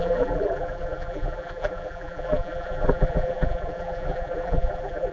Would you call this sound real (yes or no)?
no